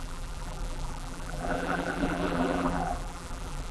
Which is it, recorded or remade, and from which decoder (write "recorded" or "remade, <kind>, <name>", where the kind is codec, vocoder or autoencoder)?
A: remade, vocoder, BigVGAN v2